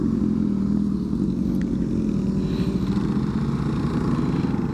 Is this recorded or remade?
recorded